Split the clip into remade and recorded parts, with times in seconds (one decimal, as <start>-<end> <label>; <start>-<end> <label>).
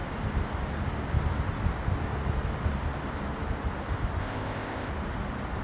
0.0-4.2 recorded; 4.2-4.9 remade; 4.9-5.6 recorded